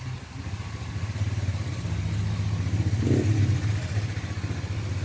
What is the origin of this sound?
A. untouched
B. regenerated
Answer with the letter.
A